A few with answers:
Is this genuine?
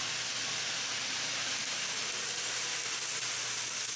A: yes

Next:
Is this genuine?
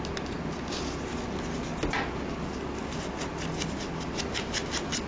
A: yes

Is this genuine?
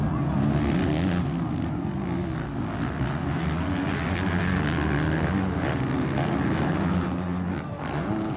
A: yes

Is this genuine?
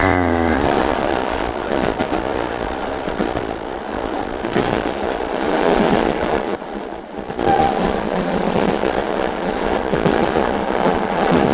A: no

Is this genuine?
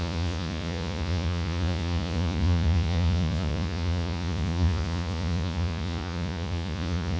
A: no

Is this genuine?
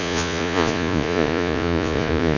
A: no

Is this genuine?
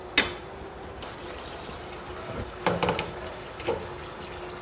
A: yes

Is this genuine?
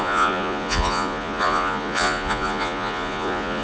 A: no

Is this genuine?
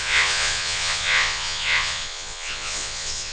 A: no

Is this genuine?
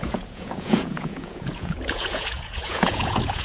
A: no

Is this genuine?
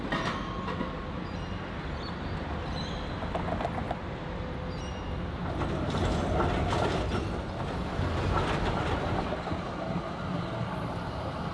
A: yes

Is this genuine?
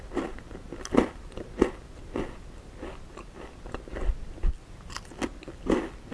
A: yes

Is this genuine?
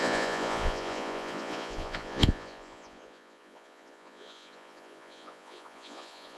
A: no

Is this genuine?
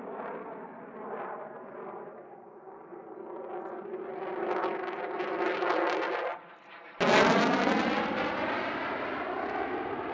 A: yes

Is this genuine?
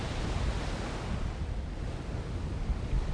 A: yes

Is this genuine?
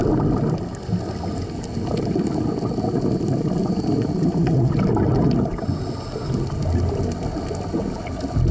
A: yes